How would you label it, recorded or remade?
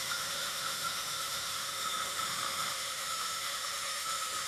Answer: remade